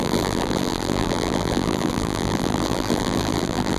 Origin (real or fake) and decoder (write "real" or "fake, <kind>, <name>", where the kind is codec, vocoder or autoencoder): fake, vocoder, BigVGAN v2